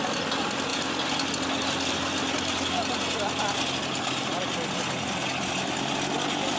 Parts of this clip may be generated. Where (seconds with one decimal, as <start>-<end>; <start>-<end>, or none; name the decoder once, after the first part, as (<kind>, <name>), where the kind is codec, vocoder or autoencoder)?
none